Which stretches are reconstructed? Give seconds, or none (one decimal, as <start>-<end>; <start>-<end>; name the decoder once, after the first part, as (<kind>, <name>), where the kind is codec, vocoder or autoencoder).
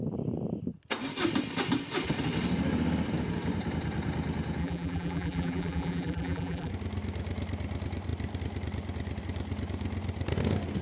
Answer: 4.6-6.7 (vocoder, BigVGAN v2)